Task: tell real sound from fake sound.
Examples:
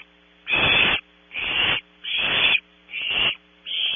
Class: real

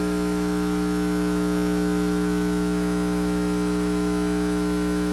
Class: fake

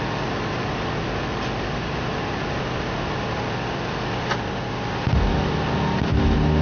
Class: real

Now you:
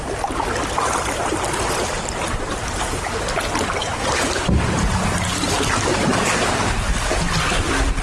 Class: real